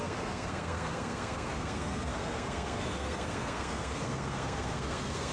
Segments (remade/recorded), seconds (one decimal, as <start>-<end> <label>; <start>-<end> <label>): 0.0-5.3 remade